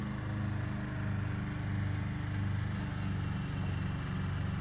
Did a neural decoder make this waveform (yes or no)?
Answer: no